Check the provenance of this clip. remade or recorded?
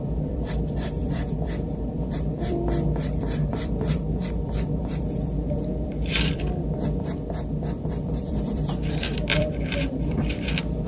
remade